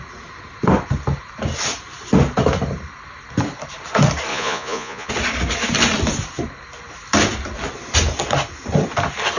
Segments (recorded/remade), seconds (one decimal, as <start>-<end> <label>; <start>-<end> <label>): 0.0-4.3 recorded; 4.3-5.1 remade; 5.1-9.4 recorded